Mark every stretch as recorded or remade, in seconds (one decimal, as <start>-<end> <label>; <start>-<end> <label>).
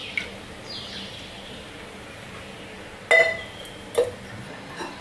0.0-5.0 recorded